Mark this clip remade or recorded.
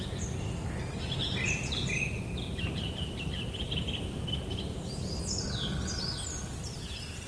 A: recorded